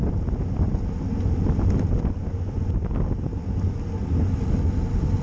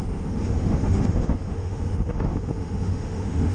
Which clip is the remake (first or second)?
second